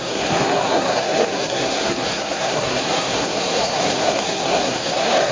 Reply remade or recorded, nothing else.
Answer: remade